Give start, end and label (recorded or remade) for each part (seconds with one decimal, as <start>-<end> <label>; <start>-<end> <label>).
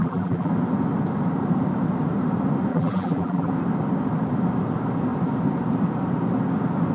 0.0-0.5 remade; 0.5-2.7 recorded; 2.7-3.5 remade; 3.5-6.9 recorded